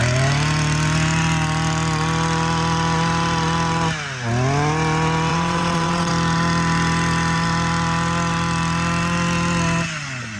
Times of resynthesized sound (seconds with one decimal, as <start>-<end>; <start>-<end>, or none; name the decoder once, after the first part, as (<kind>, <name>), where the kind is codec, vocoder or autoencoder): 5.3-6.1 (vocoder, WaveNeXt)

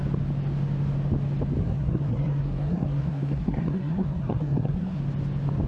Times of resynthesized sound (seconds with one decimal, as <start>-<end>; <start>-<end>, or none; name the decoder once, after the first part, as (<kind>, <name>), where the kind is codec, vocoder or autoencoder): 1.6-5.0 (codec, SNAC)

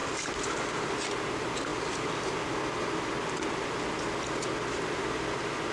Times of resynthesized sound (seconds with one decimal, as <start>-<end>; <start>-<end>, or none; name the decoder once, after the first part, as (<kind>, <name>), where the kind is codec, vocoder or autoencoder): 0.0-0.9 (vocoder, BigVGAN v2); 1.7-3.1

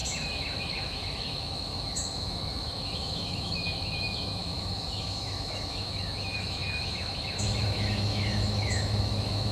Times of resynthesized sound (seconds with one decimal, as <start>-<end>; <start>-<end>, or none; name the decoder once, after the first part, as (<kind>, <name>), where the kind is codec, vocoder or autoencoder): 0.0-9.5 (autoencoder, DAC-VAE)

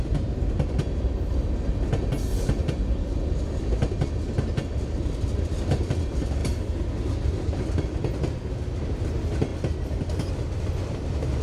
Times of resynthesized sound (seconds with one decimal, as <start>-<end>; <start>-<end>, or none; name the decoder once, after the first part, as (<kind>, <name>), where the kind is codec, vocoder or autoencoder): 9.5-10.3 (vocoder, BigVGAN v2)

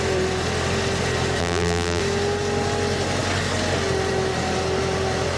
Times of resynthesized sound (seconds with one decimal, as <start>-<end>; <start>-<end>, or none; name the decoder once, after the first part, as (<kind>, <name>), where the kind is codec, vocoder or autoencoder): 1.4-2.0 (vocoder, BigVGAN v2)

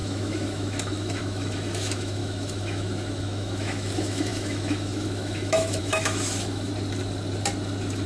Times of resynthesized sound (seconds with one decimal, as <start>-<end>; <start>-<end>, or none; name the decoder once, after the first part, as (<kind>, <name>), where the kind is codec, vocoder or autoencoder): 0.0-6.7 (autoencoder, DAC-VAE)

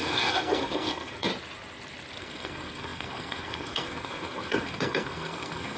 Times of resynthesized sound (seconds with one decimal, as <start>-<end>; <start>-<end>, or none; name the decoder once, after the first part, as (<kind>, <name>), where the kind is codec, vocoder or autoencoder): 0.0-1.3 (codec, SNAC); 2.2-5.8